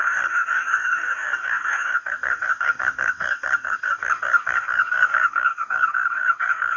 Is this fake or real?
fake